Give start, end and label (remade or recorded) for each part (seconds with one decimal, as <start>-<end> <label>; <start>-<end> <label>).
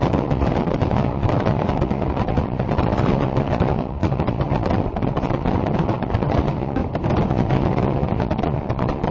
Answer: 0.0-6.8 remade; 6.8-7.3 recorded; 7.3-9.1 remade